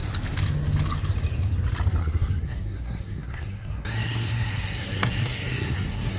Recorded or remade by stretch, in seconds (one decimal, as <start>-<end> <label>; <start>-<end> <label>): 0.0-2.0 recorded; 2.0-6.2 remade

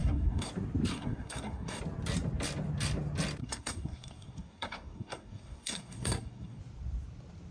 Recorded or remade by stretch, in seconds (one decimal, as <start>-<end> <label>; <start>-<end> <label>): 0.0-0.5 remade; 0.5-0.9 recorded; 0.9-1.8 remade; 1.8-3.4 recorded; 3.4-6.6 remade; 6.6-7.5 recorded

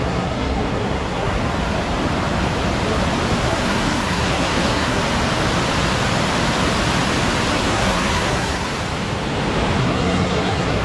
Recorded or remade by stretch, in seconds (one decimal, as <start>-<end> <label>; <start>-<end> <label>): 0.0-1.4 remade; 1.4-3.4 recorded; 3.4-5.0 remade; 5.0-7.5 recorded; 7.5-8.7 remade; 8.7-9.8 recorded; 9.8-10.8 remade

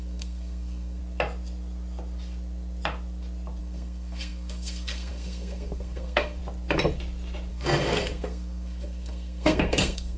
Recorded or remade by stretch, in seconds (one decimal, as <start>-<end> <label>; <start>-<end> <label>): 0.0-1.0 remade; 1.0-3.6 recorded; 3.6-6.4 remade; 6.4-7.5 recorded; 7.5-10.2 remade

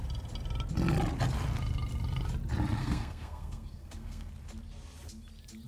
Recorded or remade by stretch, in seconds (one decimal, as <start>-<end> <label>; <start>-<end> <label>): 0.0-2.8 recorded; 2.8-4.3 remade; 4.3-5.7 recorded

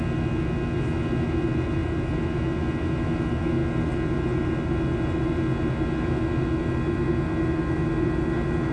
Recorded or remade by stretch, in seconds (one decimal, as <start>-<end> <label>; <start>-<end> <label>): 0.0-8.7 recorded